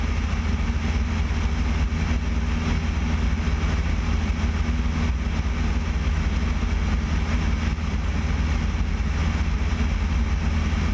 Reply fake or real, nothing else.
real